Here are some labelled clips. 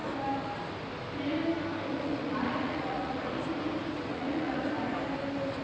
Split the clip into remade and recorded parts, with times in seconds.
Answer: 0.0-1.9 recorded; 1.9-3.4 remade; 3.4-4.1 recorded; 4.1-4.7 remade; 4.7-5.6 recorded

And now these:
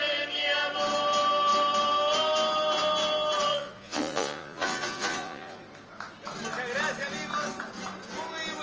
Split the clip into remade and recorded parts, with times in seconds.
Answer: 0.0-3.5 recorded; 3.5-5.6 remade; 5.6-8.6 recorded

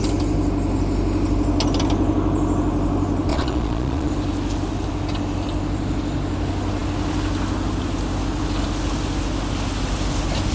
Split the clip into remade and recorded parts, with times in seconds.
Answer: 0.0-3.3 recorded; 3.3-4.1 remade; 4.1-10.5 recorded

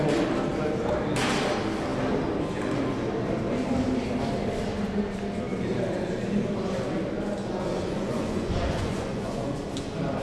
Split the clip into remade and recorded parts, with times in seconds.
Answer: 0.0-7.4 recorded; 7.4-9.6 remade; 9.6-10.2 recorded

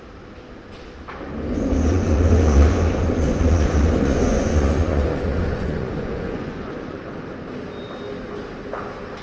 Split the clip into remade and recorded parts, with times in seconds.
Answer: 0.0-1.9 recorded; 1.9-7.0 remade; 7.0-9.2 recorded

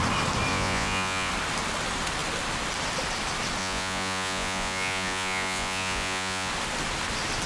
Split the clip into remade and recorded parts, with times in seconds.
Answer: 0.0-0.5 recorded; 0.5-1.3 remade; 1.3-3.6 recorded; 3.6-6.5 remade; 6.5-7.5 recorded

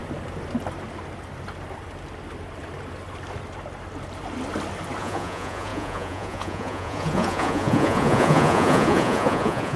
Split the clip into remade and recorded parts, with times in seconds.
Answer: 0.0-5.0 recorded; 5.0-9.8 remade

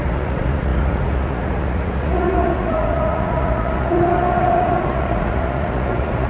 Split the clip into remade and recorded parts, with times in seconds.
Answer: 0.0-6.3 remade